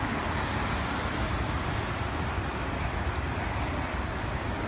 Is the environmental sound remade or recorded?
recorded